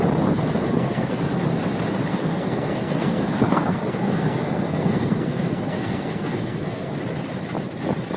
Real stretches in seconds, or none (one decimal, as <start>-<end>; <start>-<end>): 0.0-0.6; 1.2-2.1; 6.9-8.2